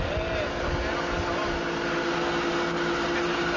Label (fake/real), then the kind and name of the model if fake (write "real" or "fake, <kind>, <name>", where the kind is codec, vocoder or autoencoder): real